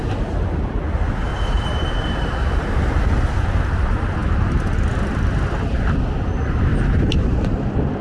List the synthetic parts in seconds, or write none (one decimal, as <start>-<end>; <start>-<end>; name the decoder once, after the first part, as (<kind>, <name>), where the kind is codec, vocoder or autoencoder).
1.3-3.0 (vocoder, BigVGAN v2); 6.7-7.6

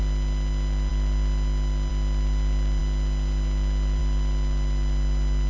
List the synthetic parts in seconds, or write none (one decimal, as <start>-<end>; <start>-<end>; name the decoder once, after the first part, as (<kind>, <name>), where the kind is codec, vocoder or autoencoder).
none